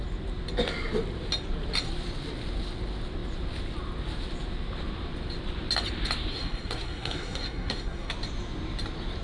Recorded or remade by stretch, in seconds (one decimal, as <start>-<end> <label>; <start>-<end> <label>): 0.0-6.3 recorded; 6.3-8.1 remade; 8.1-9.2 recorded